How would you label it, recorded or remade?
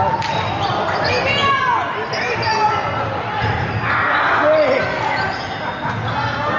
recorded